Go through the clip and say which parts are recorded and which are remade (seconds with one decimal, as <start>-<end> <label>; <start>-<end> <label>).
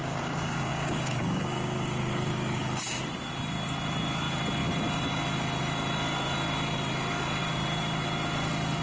0.0-3.0 remade; 3.0-8.8 recorded